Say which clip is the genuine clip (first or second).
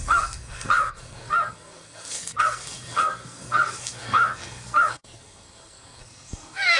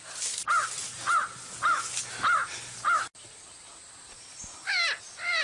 second